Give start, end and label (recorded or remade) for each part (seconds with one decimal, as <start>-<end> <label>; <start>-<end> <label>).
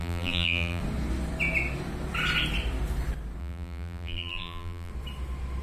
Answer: 0.0-0.8 remade; 0.8-3.4 recorded; 3.4-4.9 remade; 4.9-5.6 recorded